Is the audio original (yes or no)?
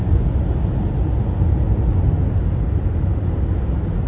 yes